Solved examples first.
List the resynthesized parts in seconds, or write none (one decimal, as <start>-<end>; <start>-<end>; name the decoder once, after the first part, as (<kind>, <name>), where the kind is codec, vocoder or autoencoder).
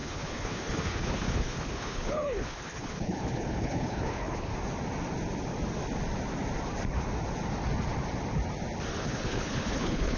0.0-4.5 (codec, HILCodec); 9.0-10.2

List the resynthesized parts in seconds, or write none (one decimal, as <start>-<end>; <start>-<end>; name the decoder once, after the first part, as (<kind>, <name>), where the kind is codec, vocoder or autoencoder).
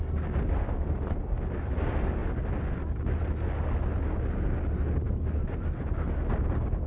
none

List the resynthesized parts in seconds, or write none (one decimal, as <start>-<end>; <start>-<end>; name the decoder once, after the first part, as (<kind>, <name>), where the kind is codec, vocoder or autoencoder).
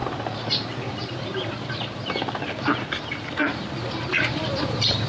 1.3-2.0 (vocoder, BigVGAN v2); 3.4-5.1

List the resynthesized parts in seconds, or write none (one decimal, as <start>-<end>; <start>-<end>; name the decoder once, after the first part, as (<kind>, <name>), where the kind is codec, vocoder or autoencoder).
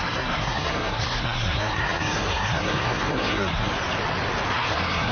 0.0-3.7 (codec, SNAC); 4.5-5.1